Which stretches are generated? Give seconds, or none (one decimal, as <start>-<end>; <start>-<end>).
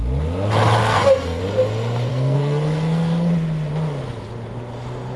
0.8-1.4; 2.1-3.3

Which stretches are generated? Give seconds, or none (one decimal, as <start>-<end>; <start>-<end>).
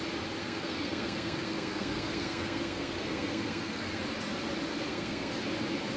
0.4-4.0; 4.7-5.3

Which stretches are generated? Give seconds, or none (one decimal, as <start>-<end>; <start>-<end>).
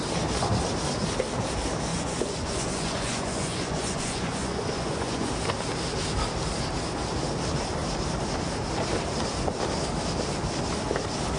1.9-5.3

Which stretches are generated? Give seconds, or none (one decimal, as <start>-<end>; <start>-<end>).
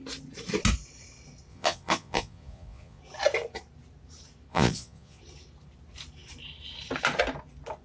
1.5-3.0; 4.5-5.2